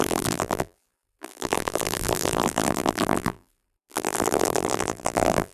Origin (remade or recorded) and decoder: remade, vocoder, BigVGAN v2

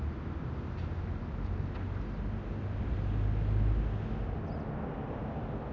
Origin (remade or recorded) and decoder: recorded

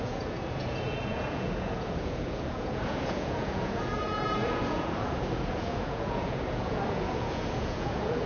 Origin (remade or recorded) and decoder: remade, vocoder, Vocos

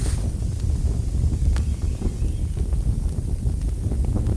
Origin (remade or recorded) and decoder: recorded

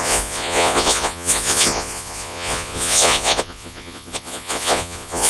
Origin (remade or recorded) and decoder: remade, vocoder, Vocos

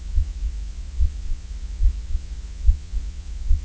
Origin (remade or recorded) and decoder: remade, vocoder, Vocos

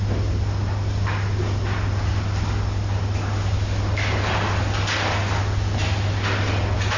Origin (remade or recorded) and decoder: recorded